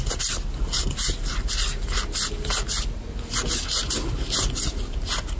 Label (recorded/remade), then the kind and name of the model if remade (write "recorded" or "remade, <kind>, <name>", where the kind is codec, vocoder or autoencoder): recorded